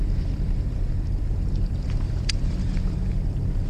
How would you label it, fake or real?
fake